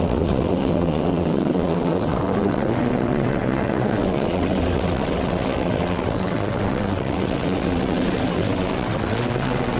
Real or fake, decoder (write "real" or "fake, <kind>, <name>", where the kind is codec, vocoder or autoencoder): fake, vocoder, WaveNeXt